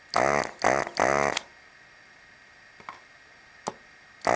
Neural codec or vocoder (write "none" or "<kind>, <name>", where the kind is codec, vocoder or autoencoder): none